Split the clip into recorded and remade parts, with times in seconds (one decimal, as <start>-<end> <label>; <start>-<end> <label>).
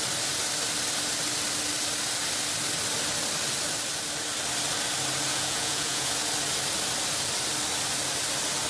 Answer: 0.0-5.3 recorded; 5.3-6.1 remade; 6.1-8.7 recorded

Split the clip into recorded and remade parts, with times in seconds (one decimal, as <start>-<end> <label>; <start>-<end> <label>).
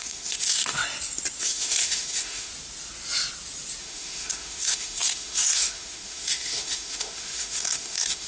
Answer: 0.0-0.8 remade; 0.8-1.4 recorded; 1.4-2.5 remade; 2.5-3.8 recorded; 3.8-8.3 remade